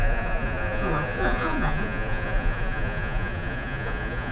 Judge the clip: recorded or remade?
remade